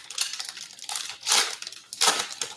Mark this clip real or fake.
real